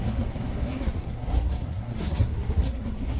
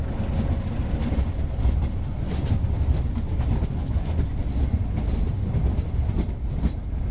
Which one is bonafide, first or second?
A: second